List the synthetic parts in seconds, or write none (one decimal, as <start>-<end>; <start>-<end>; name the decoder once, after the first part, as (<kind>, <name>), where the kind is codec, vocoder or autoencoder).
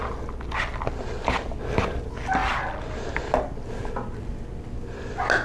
none